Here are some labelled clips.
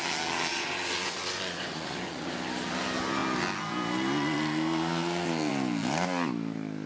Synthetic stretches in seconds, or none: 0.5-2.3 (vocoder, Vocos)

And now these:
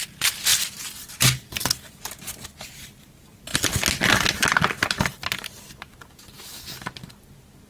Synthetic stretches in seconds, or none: none

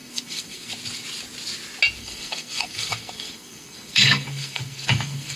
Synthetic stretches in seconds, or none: 0.0-0.7 (codec, SNAC); 2.0-5.4

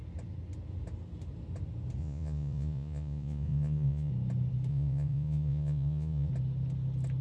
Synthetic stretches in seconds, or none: 2.0-4.1 (vocoder, Vocos); 4.7-6.3

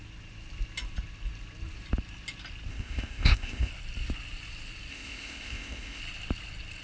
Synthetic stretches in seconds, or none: 2.7-3.7 (codec, ZipCodec); 4.9-6.0

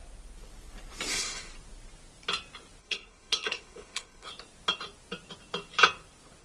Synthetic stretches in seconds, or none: 1.1-1.5 (codec, HILCodec); 2.8-4.3

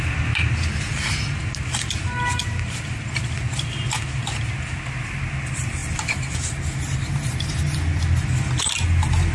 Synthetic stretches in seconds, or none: none